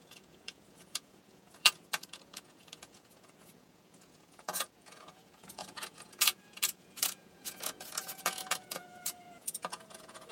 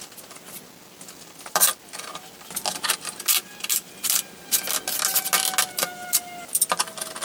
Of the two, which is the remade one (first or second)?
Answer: first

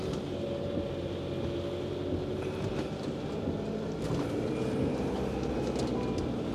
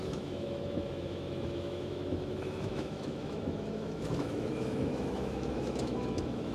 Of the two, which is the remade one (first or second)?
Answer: second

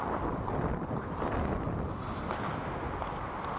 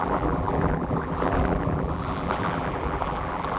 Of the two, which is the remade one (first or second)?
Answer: second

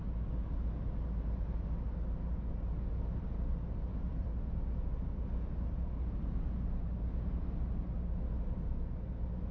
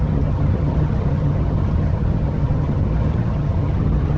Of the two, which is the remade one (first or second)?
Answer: second